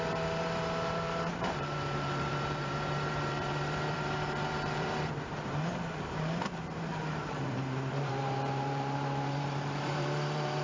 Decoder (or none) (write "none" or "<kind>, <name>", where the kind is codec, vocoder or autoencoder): vocoder, BigVGAN v2